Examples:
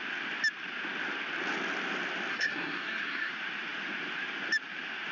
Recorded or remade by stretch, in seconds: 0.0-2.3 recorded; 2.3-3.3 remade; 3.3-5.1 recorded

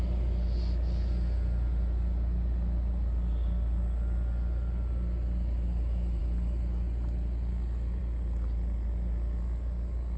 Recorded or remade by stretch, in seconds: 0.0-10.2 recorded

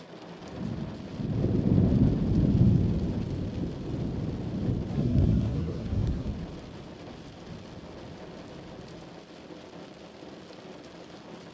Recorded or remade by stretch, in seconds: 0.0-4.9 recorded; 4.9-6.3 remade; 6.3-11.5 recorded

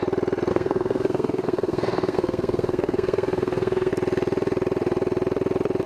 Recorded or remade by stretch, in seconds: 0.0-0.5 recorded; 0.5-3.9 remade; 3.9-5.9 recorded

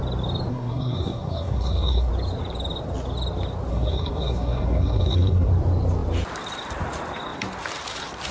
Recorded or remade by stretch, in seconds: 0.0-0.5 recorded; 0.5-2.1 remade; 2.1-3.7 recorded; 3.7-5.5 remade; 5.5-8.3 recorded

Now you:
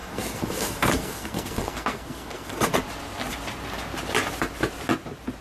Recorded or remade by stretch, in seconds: 0.0-2.7 remade; 2.7-5.4 recorded

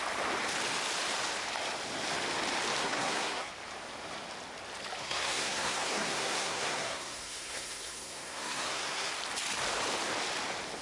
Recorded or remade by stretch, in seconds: 0.0-2.8 recorded; 2.8-3.5 remade; 3.5-5.0 recorded; 5.0-9.1 remade; 9.1-10.8 recorded